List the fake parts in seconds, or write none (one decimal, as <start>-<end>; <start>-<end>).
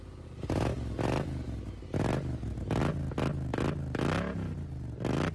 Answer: none